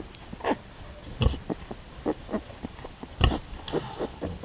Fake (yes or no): no